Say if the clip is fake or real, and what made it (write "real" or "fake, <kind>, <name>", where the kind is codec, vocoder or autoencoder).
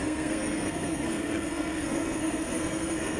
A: fake, codec, SNAC